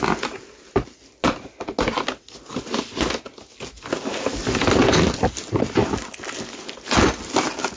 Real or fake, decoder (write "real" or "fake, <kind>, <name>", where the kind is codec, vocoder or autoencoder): real